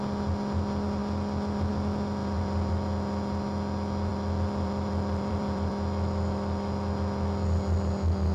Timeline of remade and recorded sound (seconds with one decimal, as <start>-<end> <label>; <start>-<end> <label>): 0.0-2.2 recorded; 2.2-2.7 remade; 2.7-4.1 recorded; 4.1-5.7 remade; 5.7-8.3 recorded